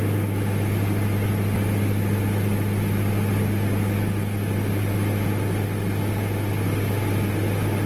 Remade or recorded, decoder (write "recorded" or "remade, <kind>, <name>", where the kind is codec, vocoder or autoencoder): recorded